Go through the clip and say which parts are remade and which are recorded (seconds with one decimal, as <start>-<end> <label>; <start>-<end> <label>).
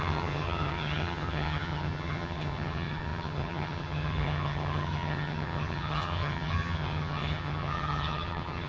0.0-8.7 remade